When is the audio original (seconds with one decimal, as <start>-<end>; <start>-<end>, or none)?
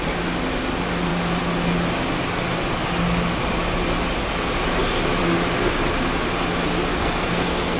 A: 0.0-6.9